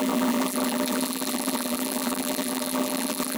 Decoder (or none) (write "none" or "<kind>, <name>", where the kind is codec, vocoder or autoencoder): vocoder, BigVGAN v2